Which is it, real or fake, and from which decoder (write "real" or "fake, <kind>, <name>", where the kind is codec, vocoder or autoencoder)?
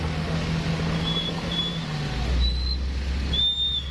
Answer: real